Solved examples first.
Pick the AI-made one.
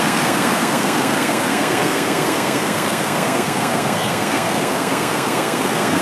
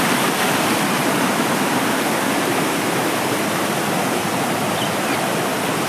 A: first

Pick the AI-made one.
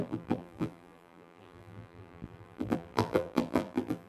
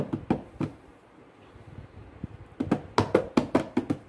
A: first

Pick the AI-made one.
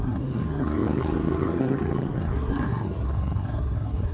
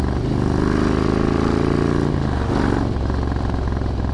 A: first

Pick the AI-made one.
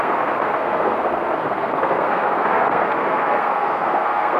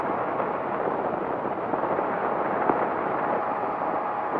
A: first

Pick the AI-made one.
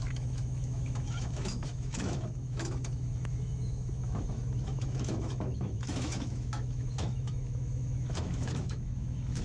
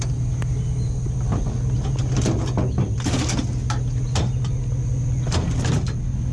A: first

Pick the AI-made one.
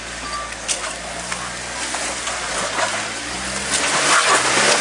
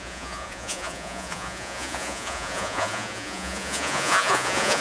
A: second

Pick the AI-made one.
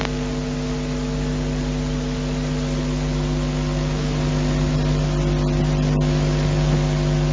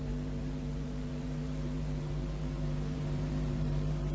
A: second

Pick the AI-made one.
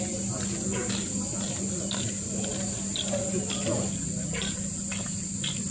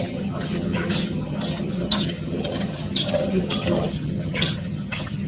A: second